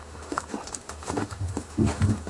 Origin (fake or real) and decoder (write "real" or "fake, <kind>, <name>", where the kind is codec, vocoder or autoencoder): fake, autoencoder, DAC-VAE